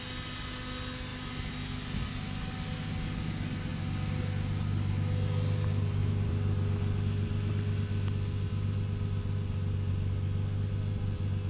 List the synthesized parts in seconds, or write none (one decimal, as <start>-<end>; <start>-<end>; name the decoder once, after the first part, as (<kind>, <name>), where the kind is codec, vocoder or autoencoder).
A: none